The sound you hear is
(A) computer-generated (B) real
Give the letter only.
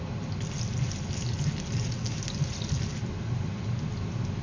B